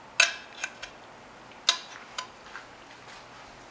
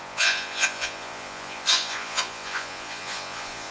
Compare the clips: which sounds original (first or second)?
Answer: first